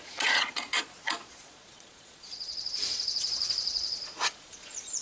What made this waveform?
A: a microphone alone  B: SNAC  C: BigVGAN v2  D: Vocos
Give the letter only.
D